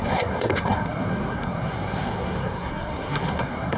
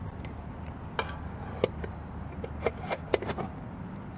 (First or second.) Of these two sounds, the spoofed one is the first